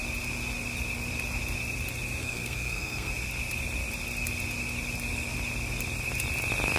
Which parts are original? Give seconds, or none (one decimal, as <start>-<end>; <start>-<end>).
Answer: 0.0-2.2; 3.1-6.8

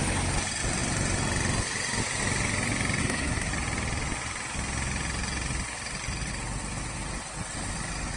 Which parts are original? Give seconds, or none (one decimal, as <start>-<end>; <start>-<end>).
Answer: 0.0-3.0; 3.5-8.2

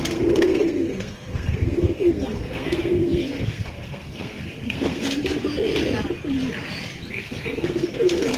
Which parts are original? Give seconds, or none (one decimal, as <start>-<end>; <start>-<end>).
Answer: 5.2-7.1

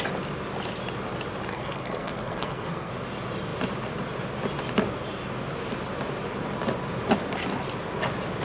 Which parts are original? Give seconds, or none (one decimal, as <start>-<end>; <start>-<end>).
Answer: 0.0-1.5; 2.9-8.4

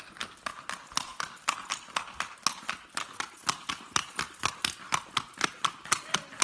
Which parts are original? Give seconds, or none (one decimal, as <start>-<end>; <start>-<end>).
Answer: 0.0-6.4